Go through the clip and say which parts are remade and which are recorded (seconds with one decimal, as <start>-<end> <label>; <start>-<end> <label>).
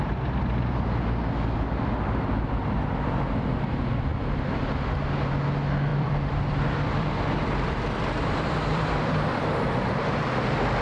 0.0-5.9 recorded; 5.9-9.9 remade; 9.9-10.8 recorded